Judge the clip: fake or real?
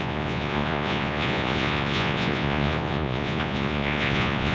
fake